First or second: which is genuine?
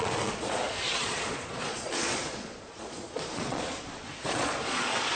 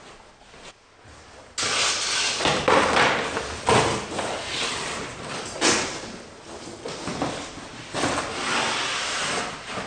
second